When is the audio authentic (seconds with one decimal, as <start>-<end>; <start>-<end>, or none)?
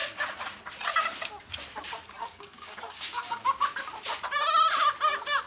0.0-2.2; 3.4-5.5